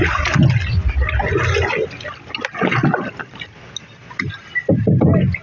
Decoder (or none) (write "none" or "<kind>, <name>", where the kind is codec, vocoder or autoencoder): none